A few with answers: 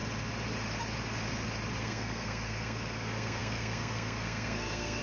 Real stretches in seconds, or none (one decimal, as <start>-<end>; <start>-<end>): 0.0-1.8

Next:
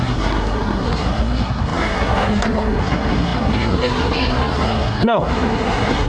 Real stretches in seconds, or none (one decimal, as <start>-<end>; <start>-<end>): none

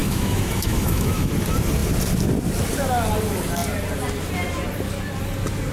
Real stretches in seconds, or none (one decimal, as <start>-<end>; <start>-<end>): 1.3-5.7

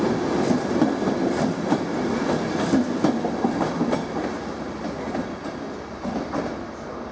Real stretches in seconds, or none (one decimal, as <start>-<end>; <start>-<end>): 0.0-7.1

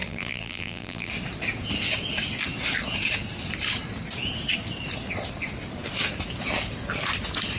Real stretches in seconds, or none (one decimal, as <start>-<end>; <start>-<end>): 1.1-7.6

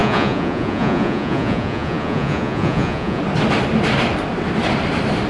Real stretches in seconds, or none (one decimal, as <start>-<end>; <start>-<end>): 3.2-5.3

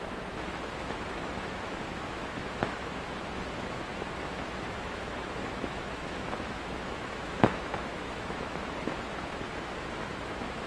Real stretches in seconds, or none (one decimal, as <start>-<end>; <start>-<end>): none

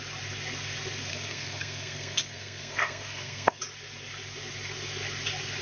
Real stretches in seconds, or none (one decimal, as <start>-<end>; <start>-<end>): 0.0-1.1; 3.6-5.6